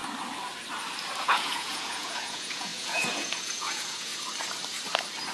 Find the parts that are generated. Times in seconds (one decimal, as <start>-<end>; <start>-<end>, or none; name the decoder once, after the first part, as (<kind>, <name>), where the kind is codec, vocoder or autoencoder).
1.2-4.1 (vocoder, Vocos)